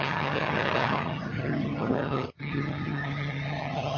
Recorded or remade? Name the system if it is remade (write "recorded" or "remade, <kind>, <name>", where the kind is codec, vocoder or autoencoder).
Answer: remade, vocoder, HiFi-GAN